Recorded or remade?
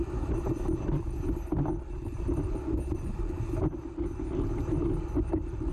recorded